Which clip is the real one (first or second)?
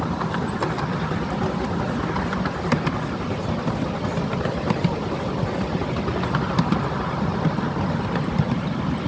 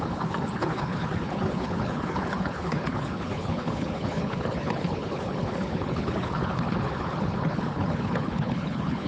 first